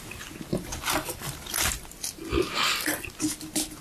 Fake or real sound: real